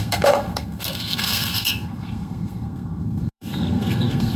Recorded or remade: remade